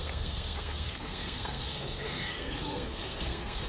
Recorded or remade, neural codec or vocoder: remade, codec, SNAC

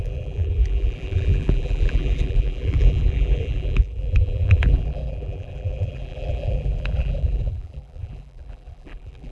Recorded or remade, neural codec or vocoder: remade, vocoder, BigVGAN v2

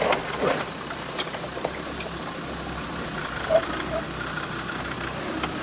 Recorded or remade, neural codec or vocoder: recorded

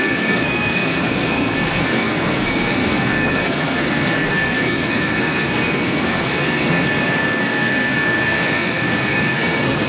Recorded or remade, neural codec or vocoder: remade, codec, SNAC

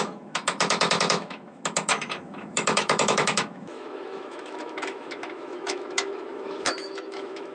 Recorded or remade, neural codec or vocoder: remade, autoencoder, DAC-VAE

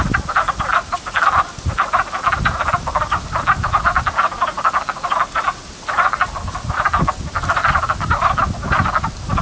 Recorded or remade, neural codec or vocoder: recorded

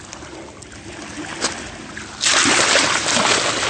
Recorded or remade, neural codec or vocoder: recorded